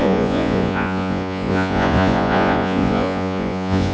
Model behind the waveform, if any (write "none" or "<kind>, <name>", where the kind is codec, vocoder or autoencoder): vocoder, Vocos